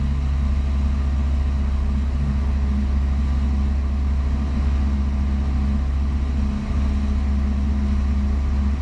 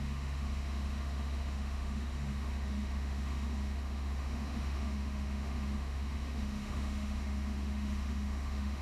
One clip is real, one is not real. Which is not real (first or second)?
second